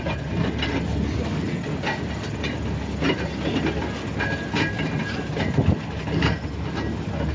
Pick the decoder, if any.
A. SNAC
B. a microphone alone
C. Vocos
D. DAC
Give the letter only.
B